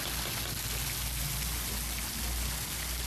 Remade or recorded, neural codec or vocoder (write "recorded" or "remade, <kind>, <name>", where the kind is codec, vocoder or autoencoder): recorded